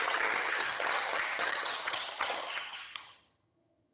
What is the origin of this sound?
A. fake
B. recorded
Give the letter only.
A